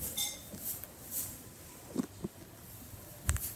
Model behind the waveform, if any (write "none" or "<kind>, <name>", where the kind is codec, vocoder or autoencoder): none